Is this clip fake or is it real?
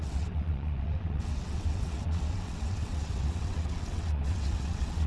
fake